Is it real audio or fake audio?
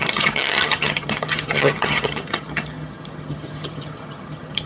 fake